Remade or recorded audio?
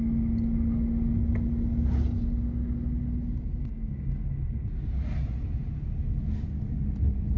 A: recorded